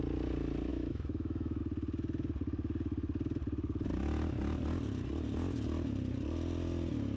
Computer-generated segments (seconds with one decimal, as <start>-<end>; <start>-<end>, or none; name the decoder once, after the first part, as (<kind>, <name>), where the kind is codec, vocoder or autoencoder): 0.7-1.6 (autoencoder, DAC-VAE)